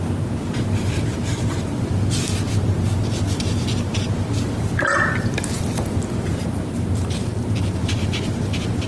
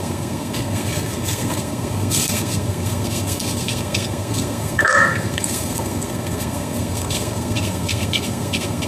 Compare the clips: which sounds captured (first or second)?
first